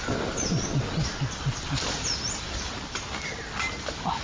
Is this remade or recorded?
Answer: recorded